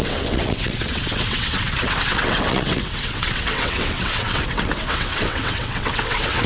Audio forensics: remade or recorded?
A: remade